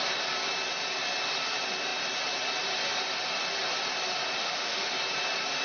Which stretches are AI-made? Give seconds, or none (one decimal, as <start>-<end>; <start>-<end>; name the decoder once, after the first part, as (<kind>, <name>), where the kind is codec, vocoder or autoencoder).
4.4-4.9 (autoencoder, DAC-VAE)

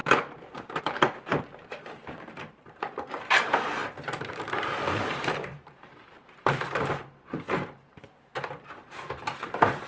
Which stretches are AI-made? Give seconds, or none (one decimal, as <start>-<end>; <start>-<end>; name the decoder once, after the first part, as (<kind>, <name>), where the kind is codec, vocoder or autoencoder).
0.8-9.9 (vocoder, BigVGAN v2)

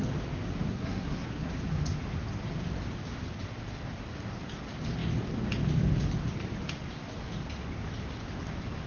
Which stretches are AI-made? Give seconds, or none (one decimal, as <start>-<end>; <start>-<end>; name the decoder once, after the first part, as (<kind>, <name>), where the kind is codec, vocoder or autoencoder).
0.7-1.6 (codec, SNAC)

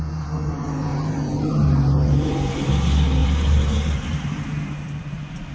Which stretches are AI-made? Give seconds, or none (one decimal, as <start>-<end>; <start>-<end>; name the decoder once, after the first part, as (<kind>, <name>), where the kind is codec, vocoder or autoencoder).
0.9-2.7 (vocoder, BigVGAN v2); 3.2-4.5

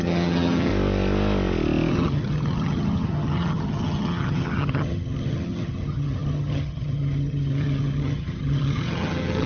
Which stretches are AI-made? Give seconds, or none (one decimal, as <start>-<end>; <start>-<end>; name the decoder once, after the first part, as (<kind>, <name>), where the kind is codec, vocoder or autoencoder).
0.0-0.7 (vocoder, HiFi-GAN); 1.9-9.5

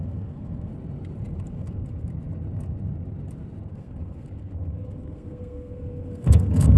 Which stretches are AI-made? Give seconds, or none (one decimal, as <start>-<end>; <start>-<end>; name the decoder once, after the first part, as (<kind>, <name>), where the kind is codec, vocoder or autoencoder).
0.0-0.7 (codec, SNAC); 1.5-2.1; 3.7-6.8